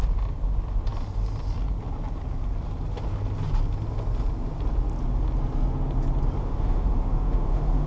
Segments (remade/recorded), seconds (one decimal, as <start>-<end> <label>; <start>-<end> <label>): 0.0-6.4 recorded; 6.4-7.9 remade